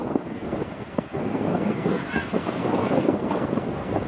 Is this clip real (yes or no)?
no